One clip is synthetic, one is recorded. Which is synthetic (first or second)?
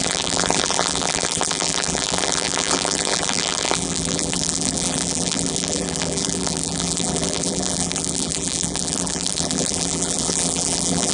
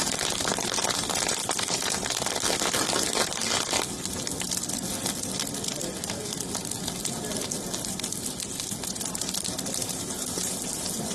first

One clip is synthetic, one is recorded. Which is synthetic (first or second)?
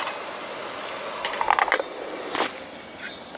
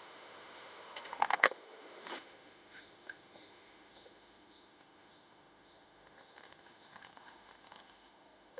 second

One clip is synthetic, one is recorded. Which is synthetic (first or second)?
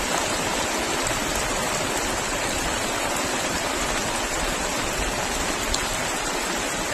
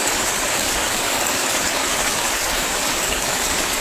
second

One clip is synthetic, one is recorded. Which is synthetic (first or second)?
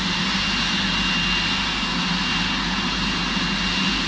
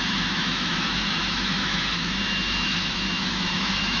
second